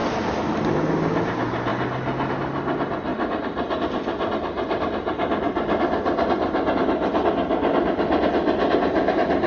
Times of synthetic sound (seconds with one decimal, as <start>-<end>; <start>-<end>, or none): none